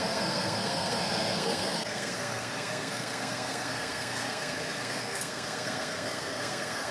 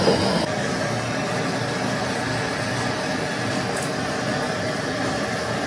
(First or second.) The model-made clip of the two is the first